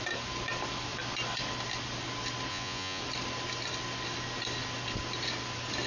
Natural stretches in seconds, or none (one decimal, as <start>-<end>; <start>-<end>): 0.0-2.5; 3.0-5.9